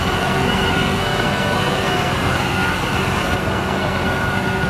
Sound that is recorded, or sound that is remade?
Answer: remade